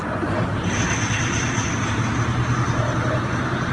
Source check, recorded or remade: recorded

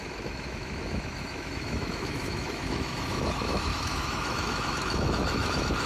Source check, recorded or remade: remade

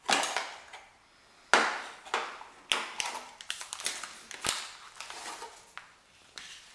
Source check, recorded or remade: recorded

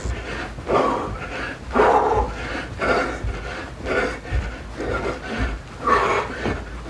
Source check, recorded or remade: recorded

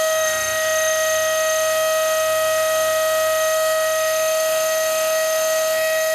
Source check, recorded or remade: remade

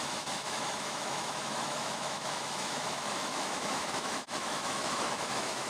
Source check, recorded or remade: remade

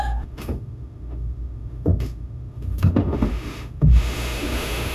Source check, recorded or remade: remade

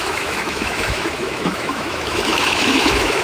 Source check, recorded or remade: remade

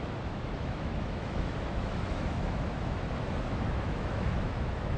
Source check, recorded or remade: remade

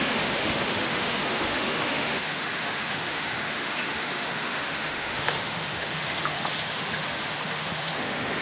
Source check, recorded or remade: remade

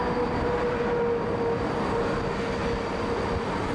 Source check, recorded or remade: recorded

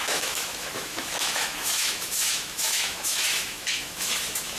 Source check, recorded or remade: remade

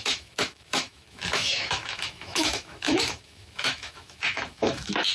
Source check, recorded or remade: remade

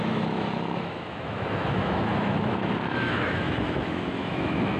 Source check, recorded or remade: remade